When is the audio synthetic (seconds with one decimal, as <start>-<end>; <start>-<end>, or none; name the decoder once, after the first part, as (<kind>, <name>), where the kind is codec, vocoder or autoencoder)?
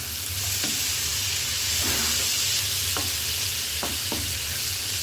3.5-4.3 (vocoder, BigVGAN v2)